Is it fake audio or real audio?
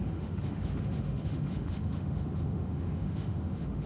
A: fake